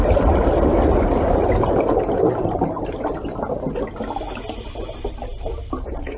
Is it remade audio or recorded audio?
recorded